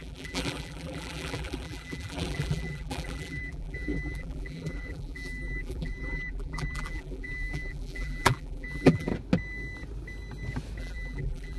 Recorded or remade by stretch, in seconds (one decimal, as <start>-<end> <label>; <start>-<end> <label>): 0.0-9.1 remade; 9.1-10.8 recorded; 10.8-11.6 remade